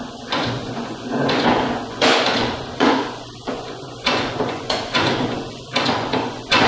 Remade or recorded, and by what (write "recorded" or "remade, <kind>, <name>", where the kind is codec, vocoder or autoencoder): remade, vocoder, Vocos